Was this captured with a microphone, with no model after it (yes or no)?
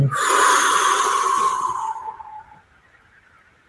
yes